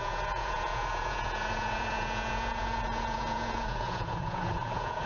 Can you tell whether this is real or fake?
fake